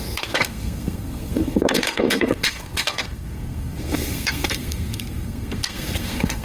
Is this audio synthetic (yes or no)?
yes